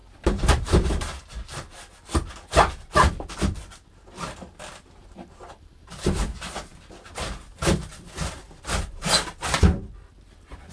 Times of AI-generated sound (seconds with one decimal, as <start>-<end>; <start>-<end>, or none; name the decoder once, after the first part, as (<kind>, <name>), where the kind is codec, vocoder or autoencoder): 0.0-1.2 (vocoder, BigVGAN v2); 5.0-6.1